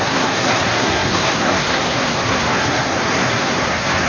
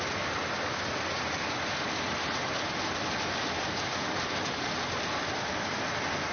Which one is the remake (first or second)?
first